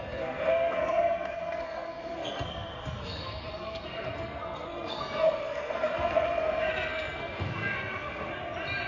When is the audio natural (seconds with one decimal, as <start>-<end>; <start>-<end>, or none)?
8.3-8.9